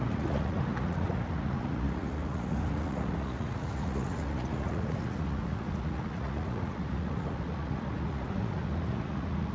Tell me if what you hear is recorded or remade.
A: remade